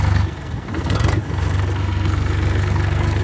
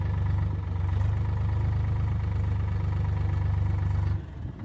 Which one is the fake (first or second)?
first